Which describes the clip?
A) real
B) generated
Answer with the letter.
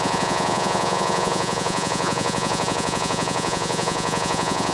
B